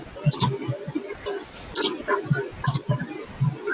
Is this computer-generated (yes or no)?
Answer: no